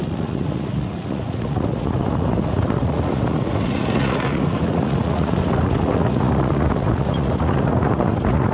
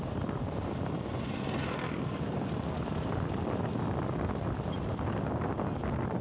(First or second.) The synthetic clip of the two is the first